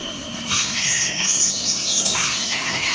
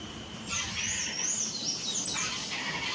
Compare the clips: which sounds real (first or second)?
second